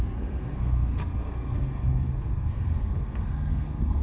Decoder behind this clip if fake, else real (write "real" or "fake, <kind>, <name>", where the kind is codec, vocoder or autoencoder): fake, codec, SNAC